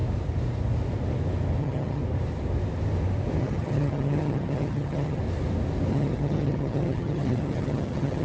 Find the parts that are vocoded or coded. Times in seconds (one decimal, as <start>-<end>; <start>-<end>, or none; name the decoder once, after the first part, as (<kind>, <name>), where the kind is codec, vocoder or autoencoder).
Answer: 1.6-2.0 (vocoder, HiFi-GAN); 3.4-5.2; 5.9-8.2